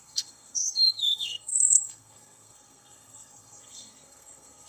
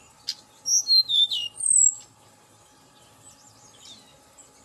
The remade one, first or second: first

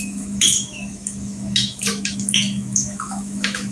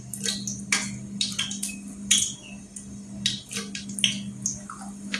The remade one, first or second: first